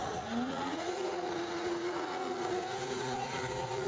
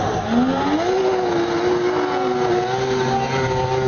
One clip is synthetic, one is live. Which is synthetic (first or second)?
first